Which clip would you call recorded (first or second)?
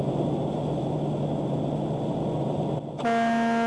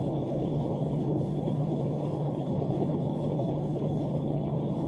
first